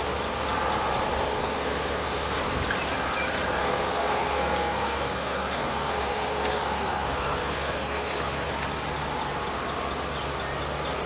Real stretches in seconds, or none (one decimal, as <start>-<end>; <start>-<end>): 0.0-1.4; 2.4-3.6; 8.5-11.1